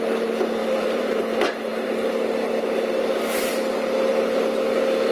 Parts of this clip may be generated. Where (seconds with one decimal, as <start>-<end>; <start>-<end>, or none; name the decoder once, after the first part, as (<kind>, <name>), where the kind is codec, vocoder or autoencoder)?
0.6-1.2 (vocoder, BigVGAN v2)